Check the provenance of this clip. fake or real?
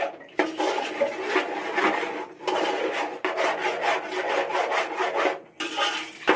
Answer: real